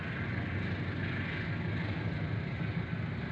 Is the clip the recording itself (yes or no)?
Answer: yes